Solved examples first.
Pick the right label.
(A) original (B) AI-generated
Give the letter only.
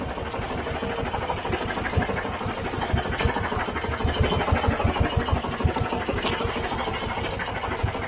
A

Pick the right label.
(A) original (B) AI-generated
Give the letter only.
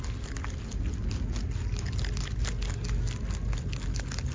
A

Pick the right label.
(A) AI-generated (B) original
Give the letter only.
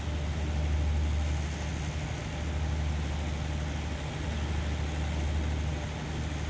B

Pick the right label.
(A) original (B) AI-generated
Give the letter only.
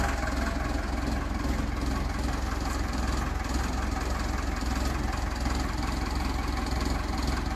A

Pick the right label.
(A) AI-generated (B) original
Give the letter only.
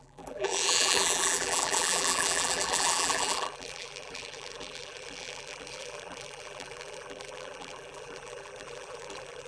A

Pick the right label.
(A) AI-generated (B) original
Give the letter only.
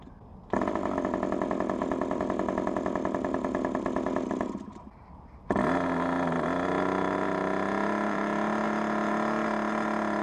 B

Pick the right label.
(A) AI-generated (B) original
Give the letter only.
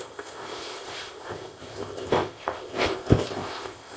A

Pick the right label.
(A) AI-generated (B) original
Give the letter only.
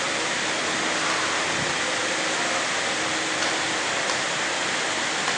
B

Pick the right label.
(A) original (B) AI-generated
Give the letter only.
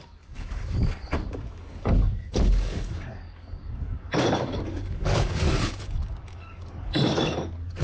B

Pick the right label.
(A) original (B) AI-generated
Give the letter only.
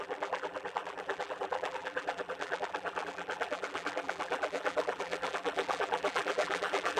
B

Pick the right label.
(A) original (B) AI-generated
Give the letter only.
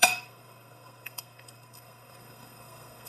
B